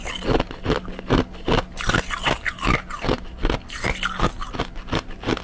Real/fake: real